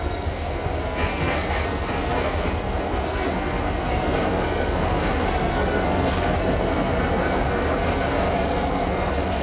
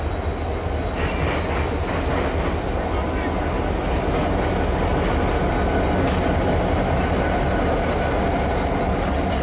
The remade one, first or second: first